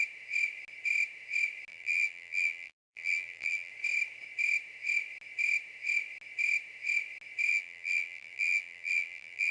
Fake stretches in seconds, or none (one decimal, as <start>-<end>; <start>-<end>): 1.7-3.7; 7.5-9.5